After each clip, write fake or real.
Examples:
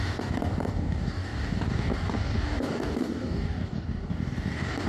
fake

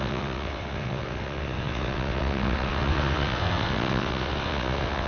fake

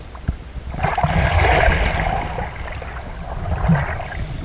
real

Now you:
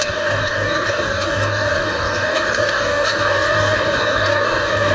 fake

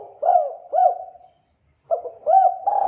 real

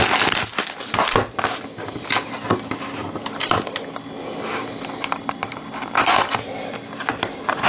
real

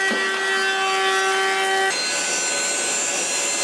real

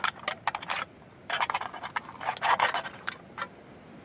real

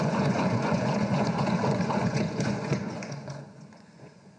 fake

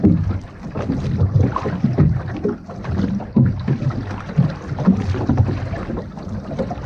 real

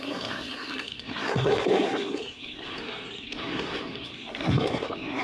fake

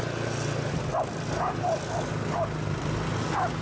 real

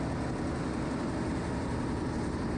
real